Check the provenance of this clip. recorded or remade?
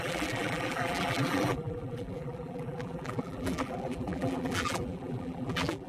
remade